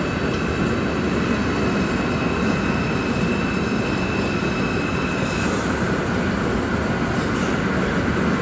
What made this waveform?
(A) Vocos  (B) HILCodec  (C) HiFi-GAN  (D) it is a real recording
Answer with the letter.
D